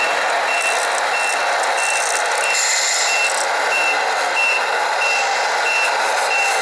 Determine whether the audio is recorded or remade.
recorded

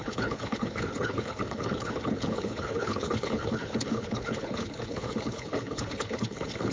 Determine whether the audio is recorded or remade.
remade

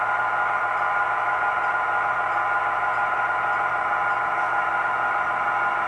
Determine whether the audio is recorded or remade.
recorded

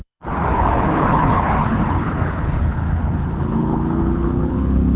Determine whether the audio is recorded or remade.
remade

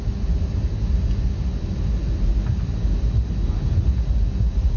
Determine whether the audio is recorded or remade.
recorded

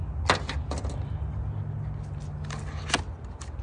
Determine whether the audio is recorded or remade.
recorded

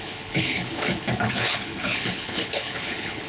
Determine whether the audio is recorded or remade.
remade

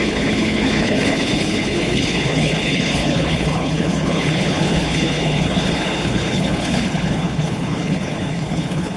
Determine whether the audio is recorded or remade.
remade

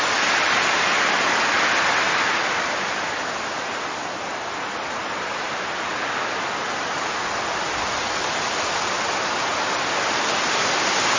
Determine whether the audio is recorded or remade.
recorded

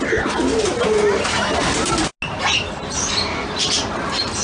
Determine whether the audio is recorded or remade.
recorded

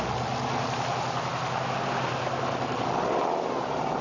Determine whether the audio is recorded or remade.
recorded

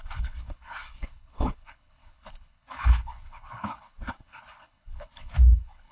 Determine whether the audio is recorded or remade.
remade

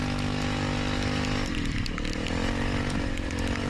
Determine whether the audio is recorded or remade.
recorded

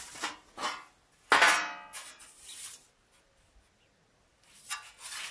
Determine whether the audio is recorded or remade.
recorded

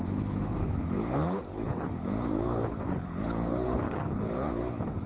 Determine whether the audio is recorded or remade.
remade